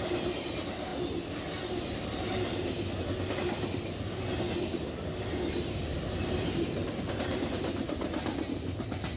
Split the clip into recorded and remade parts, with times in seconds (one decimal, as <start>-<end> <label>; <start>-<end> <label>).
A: 0.0-5.9 recorded; 5.9-8.5 remade; 8.5-9.2 recorded